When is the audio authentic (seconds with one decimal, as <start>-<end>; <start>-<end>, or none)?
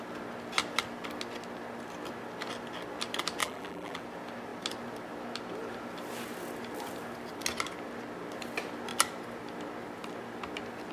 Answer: 0.0-3.4; 4.0-10.9